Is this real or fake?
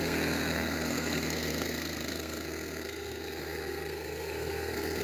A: fake